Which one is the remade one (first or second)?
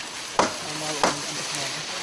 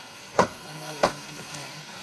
second